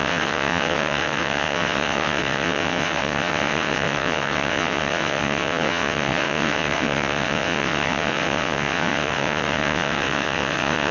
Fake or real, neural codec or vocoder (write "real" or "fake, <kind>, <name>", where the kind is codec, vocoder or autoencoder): fake, vocoder, WaveNeXt